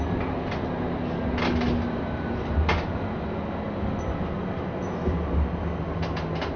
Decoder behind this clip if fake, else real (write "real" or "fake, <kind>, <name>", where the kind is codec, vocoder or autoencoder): real